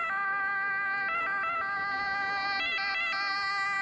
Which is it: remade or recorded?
recorded